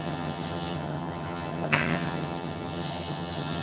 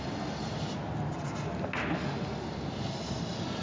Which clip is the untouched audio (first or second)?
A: second